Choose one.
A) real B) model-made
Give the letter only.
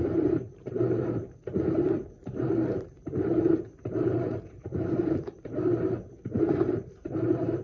B